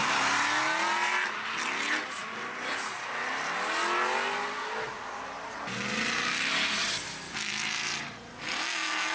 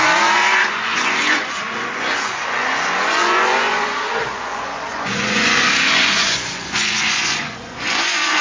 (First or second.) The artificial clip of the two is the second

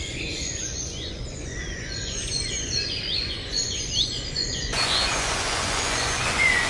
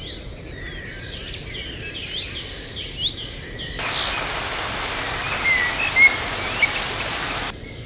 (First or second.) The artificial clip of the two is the first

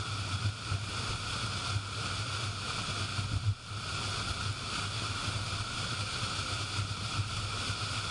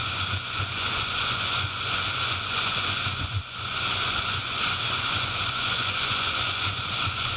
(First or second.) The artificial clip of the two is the second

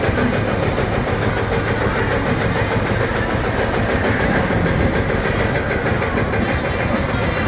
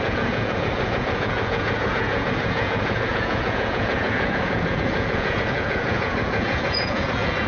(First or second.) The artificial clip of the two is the second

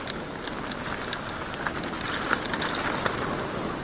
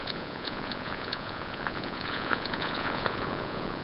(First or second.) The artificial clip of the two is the second